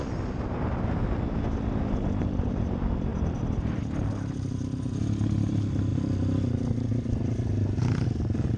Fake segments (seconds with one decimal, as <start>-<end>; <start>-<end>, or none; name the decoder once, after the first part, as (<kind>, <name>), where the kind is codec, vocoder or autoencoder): none